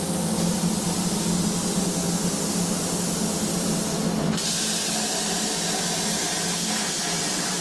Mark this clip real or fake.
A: real